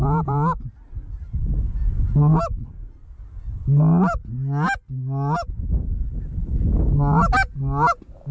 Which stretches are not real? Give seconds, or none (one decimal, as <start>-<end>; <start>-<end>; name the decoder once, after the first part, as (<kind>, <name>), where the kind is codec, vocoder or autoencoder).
none